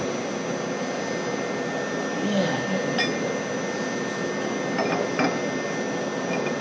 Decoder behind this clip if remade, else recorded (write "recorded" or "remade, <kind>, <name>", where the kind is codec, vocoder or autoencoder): recorded